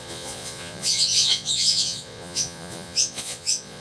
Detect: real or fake fake